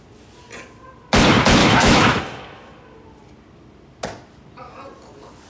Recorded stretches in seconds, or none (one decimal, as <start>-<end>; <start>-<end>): 0.0-1.6; 2.2-5.5